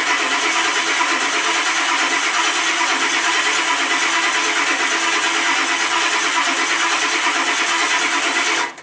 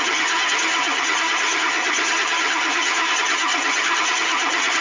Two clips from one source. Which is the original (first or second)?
first